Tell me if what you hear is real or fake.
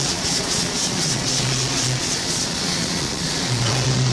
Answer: fake